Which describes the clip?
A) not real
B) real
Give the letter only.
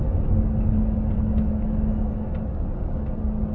B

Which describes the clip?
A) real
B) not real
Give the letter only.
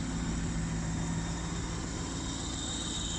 A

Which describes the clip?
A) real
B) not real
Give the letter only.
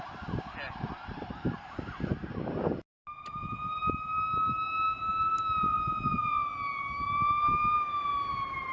A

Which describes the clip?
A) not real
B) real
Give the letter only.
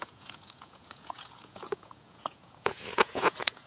A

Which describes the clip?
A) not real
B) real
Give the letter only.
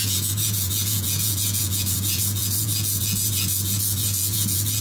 A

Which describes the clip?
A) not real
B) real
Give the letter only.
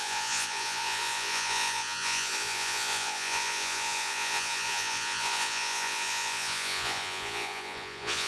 A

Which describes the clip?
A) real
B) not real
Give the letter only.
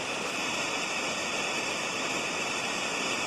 A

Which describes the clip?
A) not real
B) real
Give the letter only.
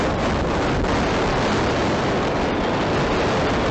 B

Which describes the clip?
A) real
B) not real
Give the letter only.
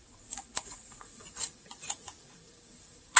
B